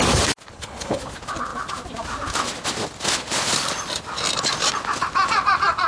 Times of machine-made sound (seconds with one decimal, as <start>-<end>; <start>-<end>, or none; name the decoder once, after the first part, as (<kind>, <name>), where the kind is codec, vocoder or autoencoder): 0.5-1.0 (codec, HILCodec)